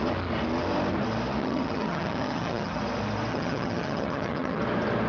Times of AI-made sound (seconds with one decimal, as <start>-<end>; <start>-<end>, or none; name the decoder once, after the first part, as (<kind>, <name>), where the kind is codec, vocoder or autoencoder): 1.4-2.8 (vocoder, HiFi-GAN); 3.3-4.6